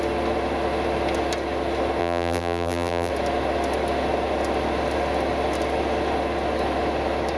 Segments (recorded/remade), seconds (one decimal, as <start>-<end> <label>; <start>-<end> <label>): 0.0-2.0 recorded; 2.0-3.1 remade; 3.1-7.4 recorded